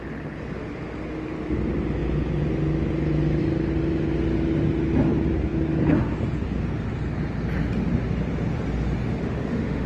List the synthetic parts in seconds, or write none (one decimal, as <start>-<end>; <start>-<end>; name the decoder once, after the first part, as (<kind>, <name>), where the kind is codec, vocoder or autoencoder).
9.2-9.9 (autoencoder, DAC-VAE)